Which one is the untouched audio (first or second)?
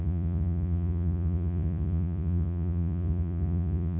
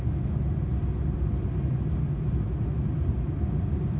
second